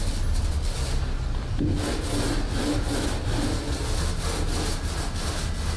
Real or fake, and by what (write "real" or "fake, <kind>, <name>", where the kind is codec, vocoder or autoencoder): real